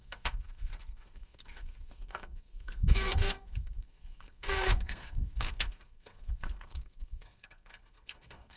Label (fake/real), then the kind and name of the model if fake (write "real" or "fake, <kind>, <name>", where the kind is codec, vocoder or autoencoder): fake, codec, SNAC